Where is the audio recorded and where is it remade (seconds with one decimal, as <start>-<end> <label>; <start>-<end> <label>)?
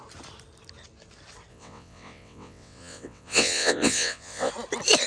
0.0-1.5 recorded; 1.5-4.5 remade; 4.5-5.1 recorded